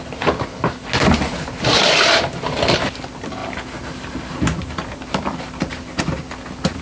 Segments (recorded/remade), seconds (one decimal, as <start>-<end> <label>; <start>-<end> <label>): 0.0-6.8 recorded